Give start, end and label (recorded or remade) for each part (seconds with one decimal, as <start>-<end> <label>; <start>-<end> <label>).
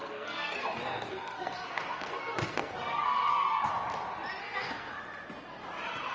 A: 0.0-3.7 remade; 3.7-4.4 recorded; 4.4-4.9 remade; 4.9-6.1 recorded